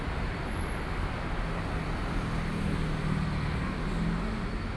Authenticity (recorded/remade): recorded